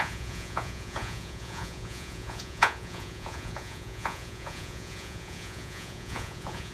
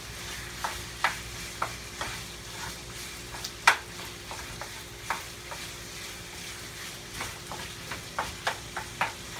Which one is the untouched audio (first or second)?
second